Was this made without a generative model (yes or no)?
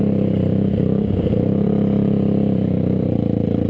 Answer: no